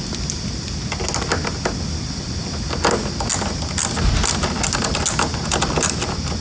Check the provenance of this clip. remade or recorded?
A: recorded